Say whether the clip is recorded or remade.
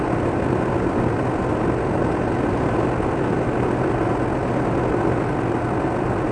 recorded